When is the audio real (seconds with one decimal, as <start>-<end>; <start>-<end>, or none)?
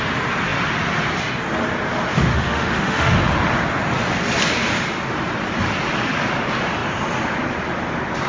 0.0-2.1; 3.3-8.3